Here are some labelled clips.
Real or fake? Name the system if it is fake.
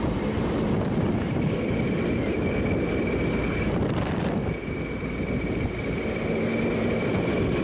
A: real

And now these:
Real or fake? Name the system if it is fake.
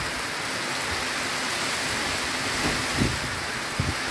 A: real